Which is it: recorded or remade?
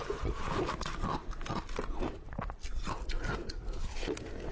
recorded